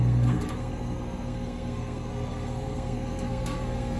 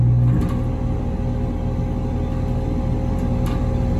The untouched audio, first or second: second